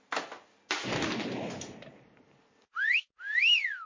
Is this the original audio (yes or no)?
yes